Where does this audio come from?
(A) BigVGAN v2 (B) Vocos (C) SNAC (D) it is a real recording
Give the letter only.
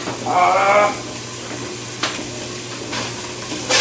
D